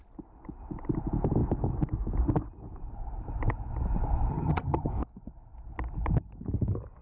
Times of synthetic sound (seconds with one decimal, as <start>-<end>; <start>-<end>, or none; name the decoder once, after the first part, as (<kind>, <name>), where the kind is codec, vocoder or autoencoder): 4.3-4.9 (vocoder, HiFi-GAN)